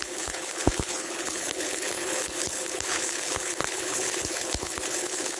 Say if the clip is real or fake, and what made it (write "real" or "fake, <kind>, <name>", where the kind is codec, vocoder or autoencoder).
fake, codec, HILCodec